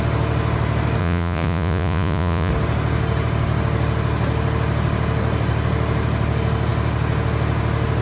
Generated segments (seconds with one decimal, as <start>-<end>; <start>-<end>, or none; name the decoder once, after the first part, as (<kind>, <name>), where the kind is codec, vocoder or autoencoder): 1.0-2.5 (vocoder, Vocos)

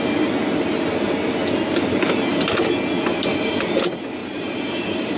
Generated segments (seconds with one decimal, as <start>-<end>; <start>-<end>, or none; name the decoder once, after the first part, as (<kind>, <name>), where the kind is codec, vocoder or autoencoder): 3.1-3.8 (vocoder, BigVGAN v2); 4.2-5.2

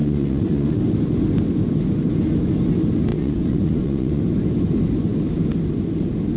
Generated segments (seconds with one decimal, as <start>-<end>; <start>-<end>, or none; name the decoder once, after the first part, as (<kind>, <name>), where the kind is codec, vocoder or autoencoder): 0.0-0.8 (vocoder, Vocos); 3.1-4.2

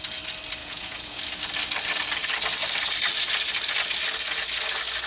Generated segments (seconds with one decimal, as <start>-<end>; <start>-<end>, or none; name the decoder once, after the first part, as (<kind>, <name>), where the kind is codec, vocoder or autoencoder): 0.6-1.2 (vocoder, Vocos)

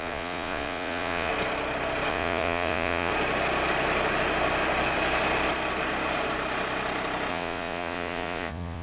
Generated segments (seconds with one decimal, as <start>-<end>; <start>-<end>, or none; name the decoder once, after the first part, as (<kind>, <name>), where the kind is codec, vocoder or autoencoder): 0.0-1.3 (vocoder, Vocos); 2.1-3.1; 7.3-8.8

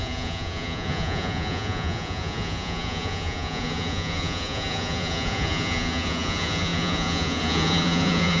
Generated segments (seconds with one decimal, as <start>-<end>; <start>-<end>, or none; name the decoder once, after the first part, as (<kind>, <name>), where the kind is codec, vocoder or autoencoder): 0.0-8.4 (vocoder, Vocos)

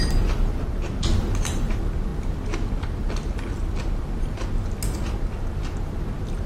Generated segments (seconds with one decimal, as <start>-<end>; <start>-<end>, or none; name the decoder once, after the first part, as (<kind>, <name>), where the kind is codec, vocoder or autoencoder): none

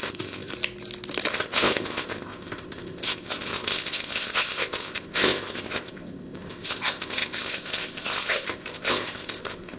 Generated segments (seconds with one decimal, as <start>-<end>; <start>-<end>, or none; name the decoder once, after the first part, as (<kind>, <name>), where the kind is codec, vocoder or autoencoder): 0.0-0.5 (codec, ZipCodec); 1.3-9.8